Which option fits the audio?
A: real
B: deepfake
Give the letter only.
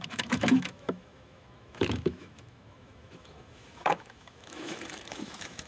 B